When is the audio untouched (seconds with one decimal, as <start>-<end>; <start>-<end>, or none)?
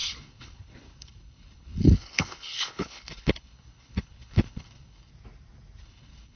5.1-5.8